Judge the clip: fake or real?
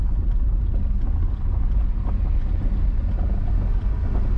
real